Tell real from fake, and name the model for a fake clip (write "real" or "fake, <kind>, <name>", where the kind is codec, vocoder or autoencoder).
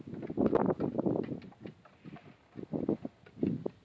real